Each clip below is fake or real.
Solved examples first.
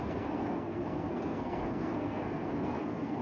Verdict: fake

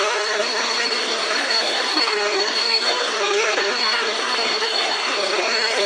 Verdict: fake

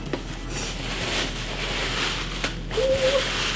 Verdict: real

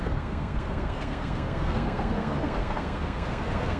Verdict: fake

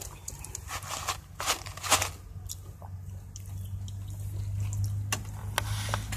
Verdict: real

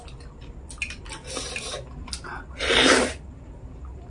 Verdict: real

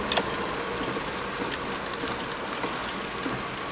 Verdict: real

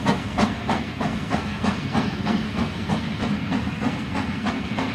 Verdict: fake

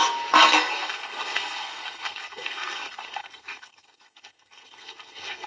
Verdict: fake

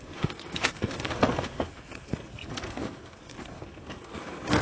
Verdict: fake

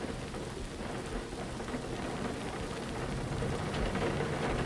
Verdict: real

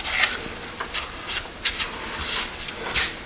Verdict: real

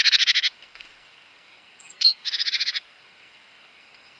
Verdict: fake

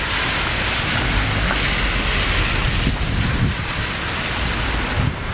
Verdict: real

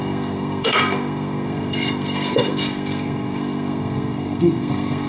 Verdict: fake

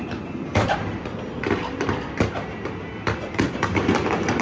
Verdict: real